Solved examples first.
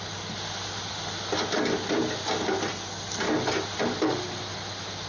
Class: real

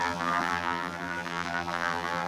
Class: fake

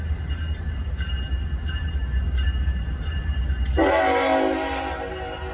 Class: real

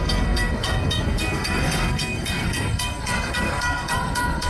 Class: fake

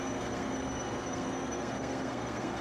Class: fake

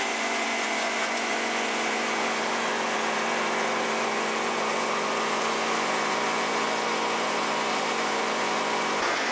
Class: fake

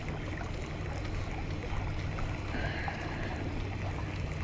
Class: real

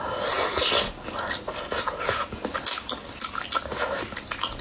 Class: real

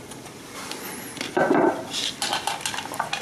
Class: real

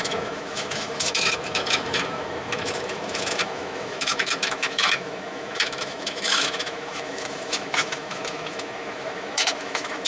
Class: fake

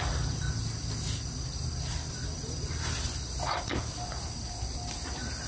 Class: real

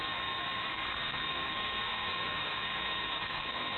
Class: fake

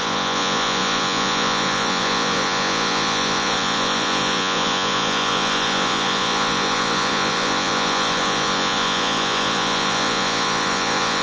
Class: fake